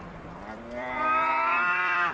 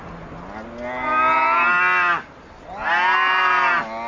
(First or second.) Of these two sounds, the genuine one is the second